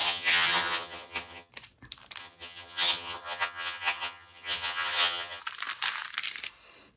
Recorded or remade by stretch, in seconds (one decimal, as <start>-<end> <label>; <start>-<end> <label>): 0.0-1.5 remade; 1.5-2.2 recorded; 2.2-5.4 remade; 5.4-7.0 recorded